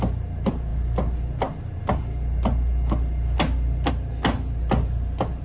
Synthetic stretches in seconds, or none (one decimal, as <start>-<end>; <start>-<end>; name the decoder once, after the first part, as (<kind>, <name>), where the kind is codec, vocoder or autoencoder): none